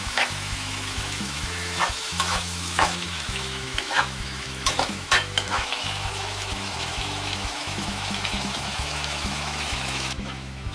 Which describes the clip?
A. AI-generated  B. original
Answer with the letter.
A